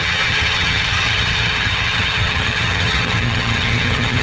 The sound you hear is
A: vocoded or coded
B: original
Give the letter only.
A